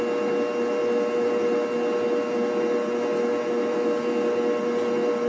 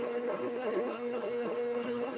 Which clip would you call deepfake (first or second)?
second